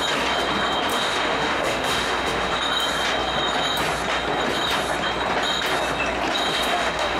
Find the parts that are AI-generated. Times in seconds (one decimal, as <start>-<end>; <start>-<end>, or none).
0.9-2.6; 6.5-7.2